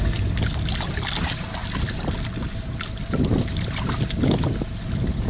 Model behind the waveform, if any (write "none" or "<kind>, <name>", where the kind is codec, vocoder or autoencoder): none